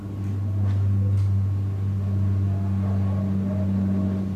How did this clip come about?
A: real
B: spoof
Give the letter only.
A